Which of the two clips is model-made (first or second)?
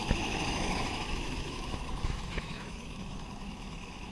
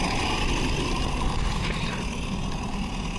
first